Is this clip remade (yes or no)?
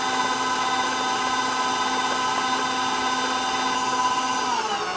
no